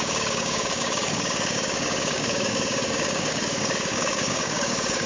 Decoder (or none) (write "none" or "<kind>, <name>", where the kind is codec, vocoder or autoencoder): codec, DAC